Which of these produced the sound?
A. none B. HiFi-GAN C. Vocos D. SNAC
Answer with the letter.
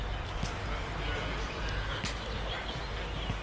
A